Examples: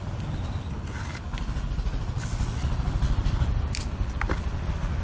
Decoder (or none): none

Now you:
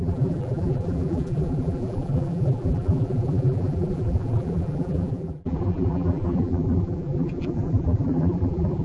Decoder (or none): vocoder, BigVGAN v2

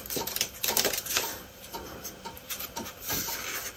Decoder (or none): vocoder, BigVGAN v2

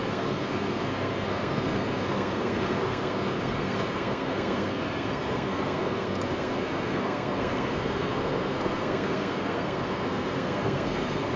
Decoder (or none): codec, SNAC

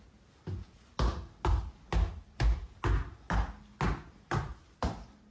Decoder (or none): none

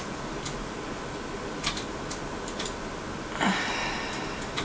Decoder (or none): none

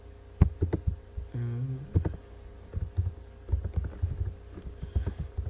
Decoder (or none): none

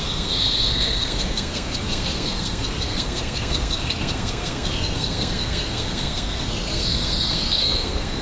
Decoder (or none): codec, SNAC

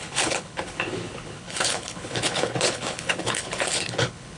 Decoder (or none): codec, HILCodec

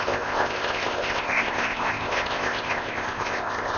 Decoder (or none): codec, ZipCodec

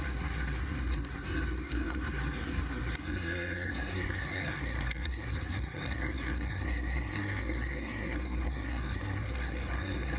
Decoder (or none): codec, SNAC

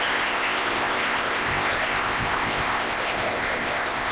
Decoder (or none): codec, ZipCodec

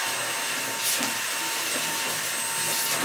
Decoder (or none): none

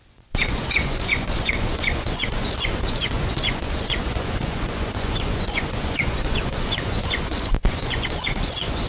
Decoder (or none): vocoder, Vocos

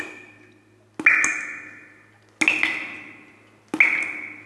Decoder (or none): none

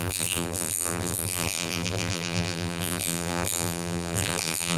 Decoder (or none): vocoder, BigVGAN v2